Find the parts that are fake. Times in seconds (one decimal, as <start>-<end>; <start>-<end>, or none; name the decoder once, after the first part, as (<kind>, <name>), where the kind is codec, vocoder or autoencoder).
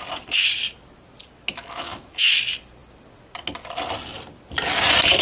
1.5-2.4 (autoencoder, DAC-VAE)